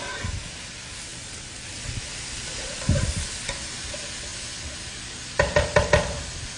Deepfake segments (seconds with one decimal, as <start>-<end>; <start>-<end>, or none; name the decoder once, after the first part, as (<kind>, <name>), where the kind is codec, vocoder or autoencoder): 1.1-3.5 (vocoder, BigVGAN v2); 4.3-5.9